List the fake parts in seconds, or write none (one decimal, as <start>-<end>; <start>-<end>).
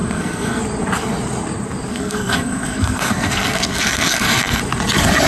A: 0.0-0.6; 1.9-4.6